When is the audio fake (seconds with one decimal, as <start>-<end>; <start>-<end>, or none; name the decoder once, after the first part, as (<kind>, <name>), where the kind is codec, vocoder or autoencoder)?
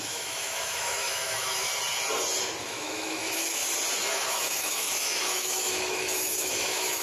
0.0-1.7 (autoencoder, DAC-VAE); 2.6-3.6; 4.1-7.0